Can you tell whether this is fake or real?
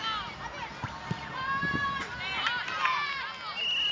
real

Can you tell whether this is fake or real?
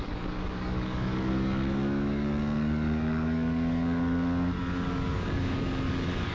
fake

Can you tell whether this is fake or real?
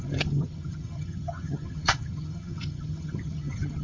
fake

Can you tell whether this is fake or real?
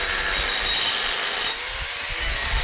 real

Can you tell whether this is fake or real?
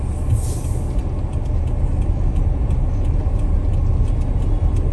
real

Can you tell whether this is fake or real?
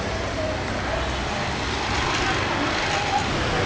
real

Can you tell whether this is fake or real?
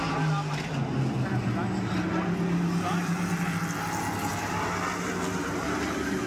real